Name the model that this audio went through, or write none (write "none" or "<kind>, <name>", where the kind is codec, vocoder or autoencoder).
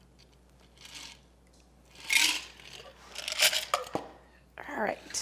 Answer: none